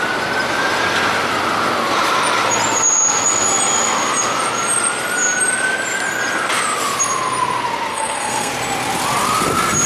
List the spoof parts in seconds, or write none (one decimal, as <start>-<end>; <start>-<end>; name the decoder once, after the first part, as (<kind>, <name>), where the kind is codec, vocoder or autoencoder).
7.9-8.5 (codec, SNAC)